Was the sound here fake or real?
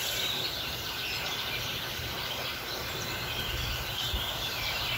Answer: fake